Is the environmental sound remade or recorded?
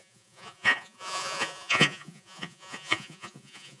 remade